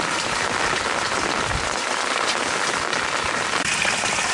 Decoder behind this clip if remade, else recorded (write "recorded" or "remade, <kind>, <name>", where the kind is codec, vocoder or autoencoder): recorded